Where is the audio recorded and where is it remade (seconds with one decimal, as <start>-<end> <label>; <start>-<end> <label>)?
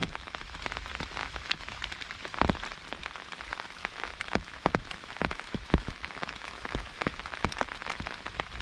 0.0-0.6 remade; 0.6-1.2 recorded; 1.2-1.8 remade; 1.8-3.8 recorded; 3.8-7.5 remade; 7.5-8.6 recorded